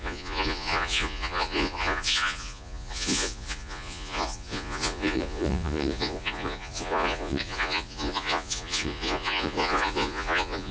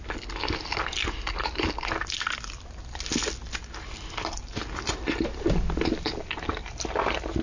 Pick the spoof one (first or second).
first